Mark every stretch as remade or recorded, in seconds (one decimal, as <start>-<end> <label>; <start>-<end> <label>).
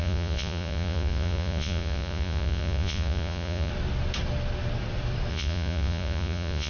0.0-3.7 remade; 3.7-5.3 recorded; 5.3-6.7 remade